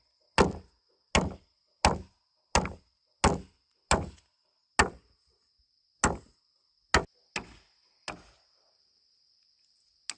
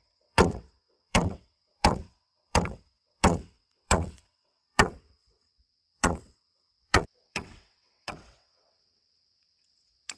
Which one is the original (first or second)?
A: first